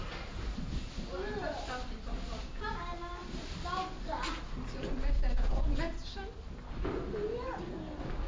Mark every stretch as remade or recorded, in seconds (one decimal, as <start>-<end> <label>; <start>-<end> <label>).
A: 0.0-8.3 recorded